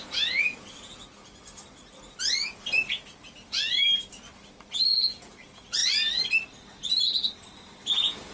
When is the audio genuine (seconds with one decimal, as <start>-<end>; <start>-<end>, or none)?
0.9-4.9; 5.8-7.9